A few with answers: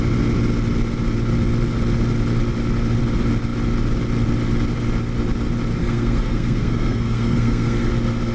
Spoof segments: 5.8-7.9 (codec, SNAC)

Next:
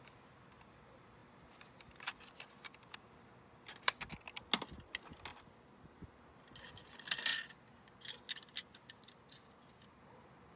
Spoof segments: none

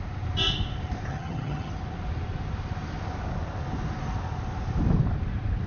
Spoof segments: 1.1-1.7 (vocoder, HiFi-GAN)

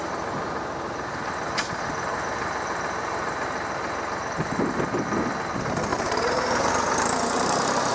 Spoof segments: 0.0-1.5 (vocoder, BigVGAN v2); 2.1-4.1; 5.9-6.7

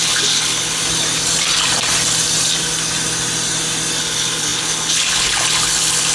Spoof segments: 0.0-0.8 (codec, HILCodec); 4.0-6.1

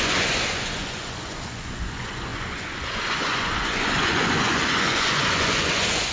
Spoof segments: 0.0-6.1 (vocoder, Vocos)

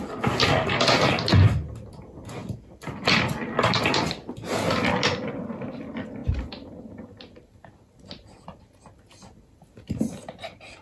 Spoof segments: none

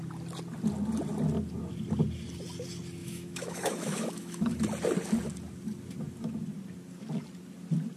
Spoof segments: 3.0-4.6 (autoencoder, DAC-VAE)